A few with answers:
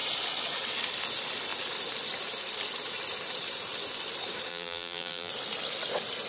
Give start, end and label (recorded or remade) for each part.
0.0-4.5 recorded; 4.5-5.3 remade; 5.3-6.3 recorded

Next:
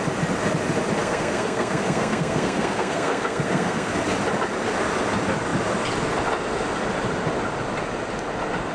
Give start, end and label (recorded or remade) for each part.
0.0-1.0 recorded; 1.0-3.9 remade; 3.9-8.7 recorded

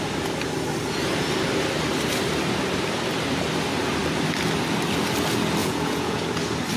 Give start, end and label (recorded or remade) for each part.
0.0-5.6 recorded; 5.6-6.2 remade; 6.2-6.8 recorded